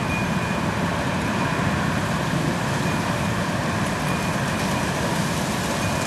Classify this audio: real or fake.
real